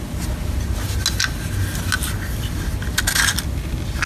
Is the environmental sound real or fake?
real